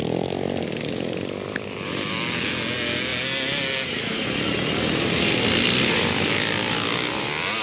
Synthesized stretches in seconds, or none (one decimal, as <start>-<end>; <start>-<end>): none